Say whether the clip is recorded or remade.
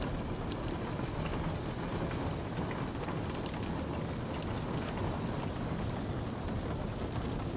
recorded